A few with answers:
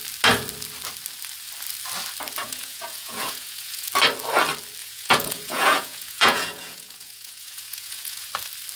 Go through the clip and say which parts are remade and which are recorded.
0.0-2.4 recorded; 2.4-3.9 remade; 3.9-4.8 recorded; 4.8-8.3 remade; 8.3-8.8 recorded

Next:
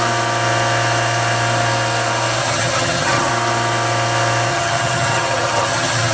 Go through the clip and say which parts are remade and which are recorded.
0.0-2.4 recorded; 2.4-3.3 remade; 3.3-4.5 recorded; 4.5-6.1 remade

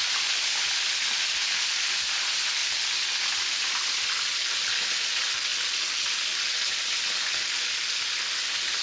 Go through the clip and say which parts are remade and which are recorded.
0.0-8.8 recorded

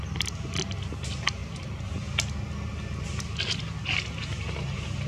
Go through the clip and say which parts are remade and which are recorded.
0.0-5.1 recorded

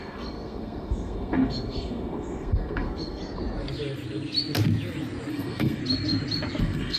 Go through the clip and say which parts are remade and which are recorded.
0.0-3.2 remade; 3.2-5.3 recorded; 5.3-5.8 remade; 5.8-6.6 recorded; 6.6-7.0 remade

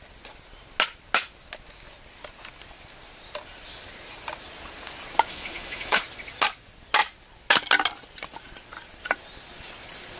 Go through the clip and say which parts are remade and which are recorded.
0.0-5.3 recorded; 5.3-6.0 remade; 6.0-10.2 recorded